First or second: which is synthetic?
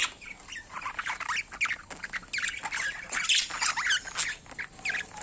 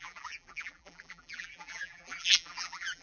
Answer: second